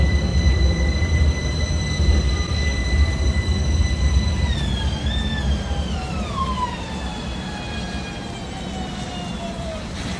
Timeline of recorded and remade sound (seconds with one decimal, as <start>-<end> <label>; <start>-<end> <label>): 0.0-10.2 recorded